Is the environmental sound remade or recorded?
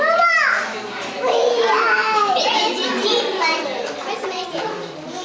recorded